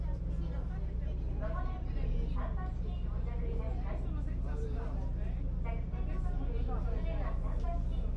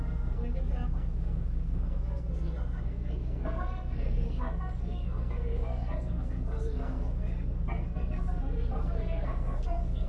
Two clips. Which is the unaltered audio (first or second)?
first